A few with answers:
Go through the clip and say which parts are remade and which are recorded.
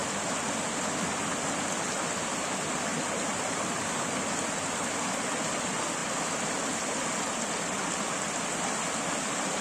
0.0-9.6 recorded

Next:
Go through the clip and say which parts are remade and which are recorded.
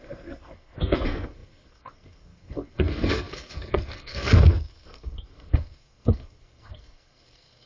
0.0-7.7 remade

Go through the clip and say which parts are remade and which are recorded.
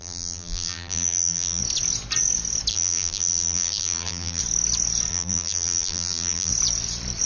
0.0-1.6 remade; 1.6-2.7 recorded; 2.7-4.4 remade; 4.4-5.1 recorded; 5.1-6.5 remade; 6.5-7.3 recorded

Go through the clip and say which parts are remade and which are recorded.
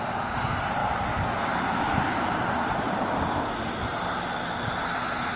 0.0-5.4 recorded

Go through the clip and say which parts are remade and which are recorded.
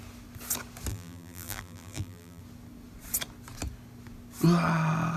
0.0-0.9 recorded; 0.9-2.4 remade; 2.4-5.2 recorded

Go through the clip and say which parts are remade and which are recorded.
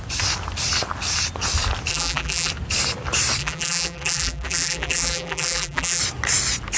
0.0-1.9 recorded; 1.9-2.5 remade; 2.5-3.4 recorded; 3.4-6.0 remade; 6.0-6.8 recorded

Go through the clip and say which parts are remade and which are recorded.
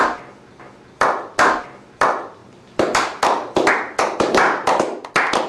0.0-5.5 recorded